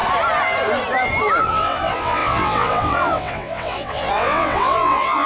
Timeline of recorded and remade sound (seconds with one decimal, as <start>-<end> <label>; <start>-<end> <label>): 0.0-1.4 recorded; 1.4-5.3 remade